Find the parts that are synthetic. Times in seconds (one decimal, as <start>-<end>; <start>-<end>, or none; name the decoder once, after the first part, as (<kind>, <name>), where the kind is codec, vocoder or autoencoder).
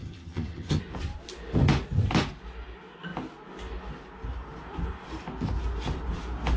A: 0.0-0.8 (vocoder, HiFi-GAN)